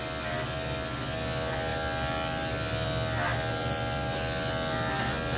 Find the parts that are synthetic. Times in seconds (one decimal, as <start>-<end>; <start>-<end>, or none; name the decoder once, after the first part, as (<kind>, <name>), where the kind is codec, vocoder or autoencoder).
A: none